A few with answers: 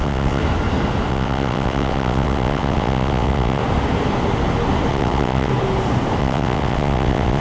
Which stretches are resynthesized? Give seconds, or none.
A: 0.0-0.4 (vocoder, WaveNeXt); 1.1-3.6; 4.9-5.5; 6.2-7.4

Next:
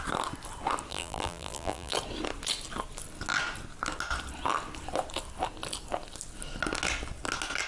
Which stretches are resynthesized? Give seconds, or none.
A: 0.9-1.9 (vocoder, BigVGAN v2)

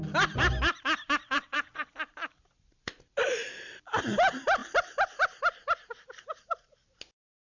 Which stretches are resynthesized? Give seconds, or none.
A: 1.2-1.9 (vocoder, WaveNeXt)

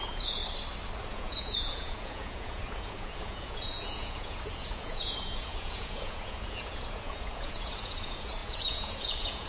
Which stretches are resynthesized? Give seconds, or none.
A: 0.0-0.4 (vocoder, Vocos); 1.1-9.5